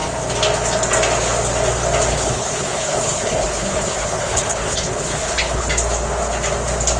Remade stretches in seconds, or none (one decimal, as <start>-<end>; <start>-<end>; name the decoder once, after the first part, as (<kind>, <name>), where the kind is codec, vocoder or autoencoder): 2.1-5.7 (codec, HILCodec)